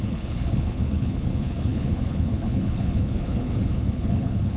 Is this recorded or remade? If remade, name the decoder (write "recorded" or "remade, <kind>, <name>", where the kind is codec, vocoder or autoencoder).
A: remade, codec, HILCodec